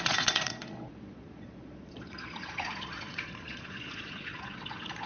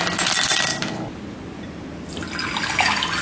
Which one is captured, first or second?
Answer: second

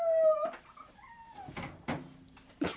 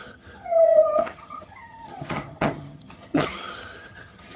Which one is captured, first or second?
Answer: first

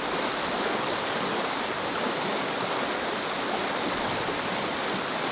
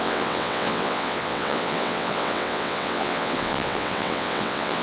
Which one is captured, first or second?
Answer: first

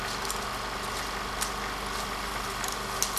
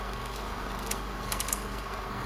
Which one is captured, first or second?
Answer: first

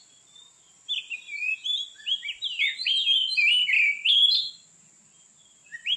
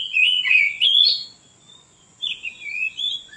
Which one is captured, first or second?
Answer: first